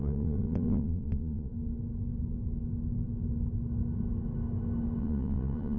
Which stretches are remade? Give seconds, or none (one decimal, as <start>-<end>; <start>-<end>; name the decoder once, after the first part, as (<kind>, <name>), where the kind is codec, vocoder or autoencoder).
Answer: 0.0-1.5 (vocoder, Vocos); 5.0-5.8